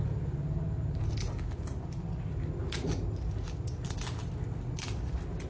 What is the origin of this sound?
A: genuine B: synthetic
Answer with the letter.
A